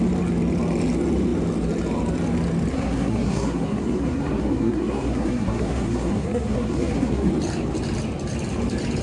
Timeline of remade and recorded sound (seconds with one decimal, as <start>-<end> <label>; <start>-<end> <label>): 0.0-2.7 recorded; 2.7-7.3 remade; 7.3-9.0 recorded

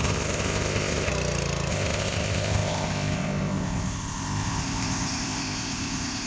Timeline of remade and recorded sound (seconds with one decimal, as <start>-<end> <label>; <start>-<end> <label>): 0.0-1.1 remade; 1.1-1.7 recorded; 1.7-6.3 remade

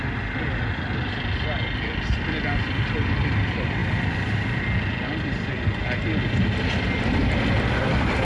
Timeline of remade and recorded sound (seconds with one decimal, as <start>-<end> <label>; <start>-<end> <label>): 0.0-8.2 recorded